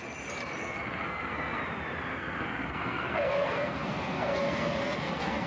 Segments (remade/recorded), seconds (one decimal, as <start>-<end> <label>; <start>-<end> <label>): 0.0-0.6 recorded; 0.6-1.6 remade; 1.6-2.1 recorded; 2.1-5.5 remade